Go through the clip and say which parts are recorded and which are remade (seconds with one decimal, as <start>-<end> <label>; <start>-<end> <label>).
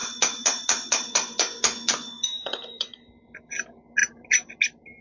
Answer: 0.0-3.0 remade; 3.0-5.0 recorded